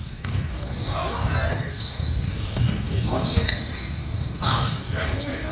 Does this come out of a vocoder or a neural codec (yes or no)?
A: yes